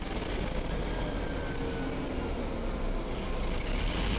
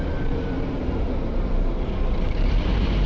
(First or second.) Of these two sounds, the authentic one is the first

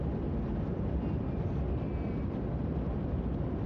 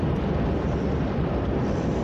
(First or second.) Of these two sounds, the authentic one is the first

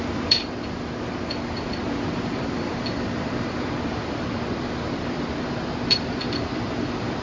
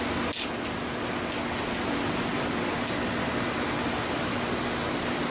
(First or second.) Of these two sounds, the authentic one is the second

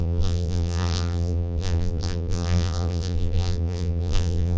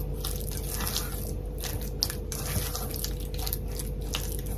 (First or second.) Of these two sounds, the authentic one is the second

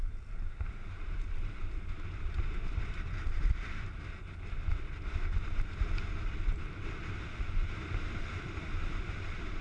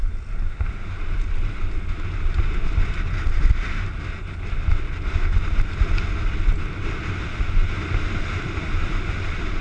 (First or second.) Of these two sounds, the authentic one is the second